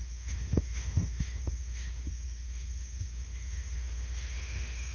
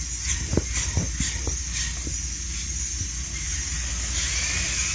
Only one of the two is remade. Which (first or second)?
first